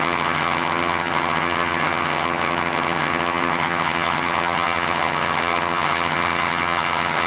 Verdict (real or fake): fake